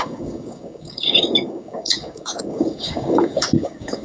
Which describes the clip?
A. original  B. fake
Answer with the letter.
B